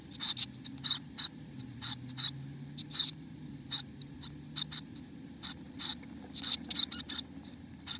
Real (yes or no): yes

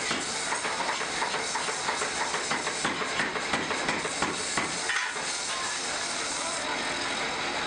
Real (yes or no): yes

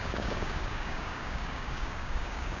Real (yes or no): no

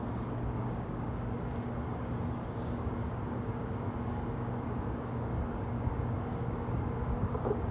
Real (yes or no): no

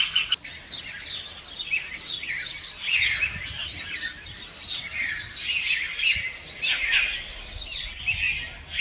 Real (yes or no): yes